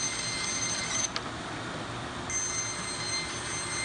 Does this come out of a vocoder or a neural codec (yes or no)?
no